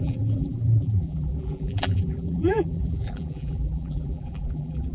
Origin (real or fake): fake